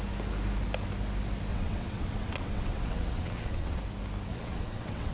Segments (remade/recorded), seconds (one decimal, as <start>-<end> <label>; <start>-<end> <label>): 0.0-1.5 recorded; 1.5-3.8 remade; 3.8-4.3 recorded; 4.3-5.1 remade